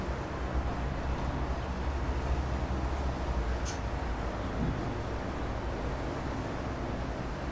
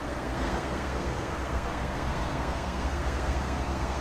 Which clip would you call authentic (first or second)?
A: first